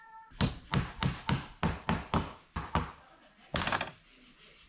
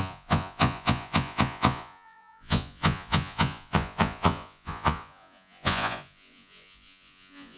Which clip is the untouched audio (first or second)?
first